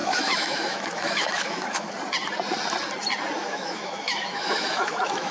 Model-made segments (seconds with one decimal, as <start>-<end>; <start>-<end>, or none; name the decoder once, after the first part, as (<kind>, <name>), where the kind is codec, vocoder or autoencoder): 0.0-1.9 (autoencoder, DAC-VAE); 3.4-5.3